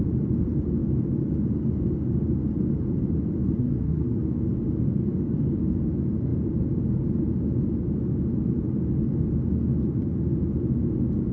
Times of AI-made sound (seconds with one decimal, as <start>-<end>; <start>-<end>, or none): 3.6-4.2